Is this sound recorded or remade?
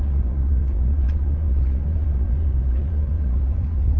remade